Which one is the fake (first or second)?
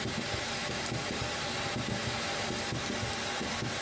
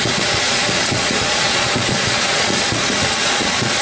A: second